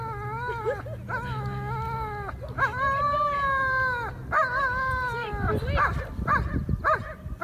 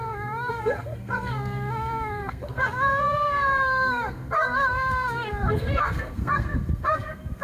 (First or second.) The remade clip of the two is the second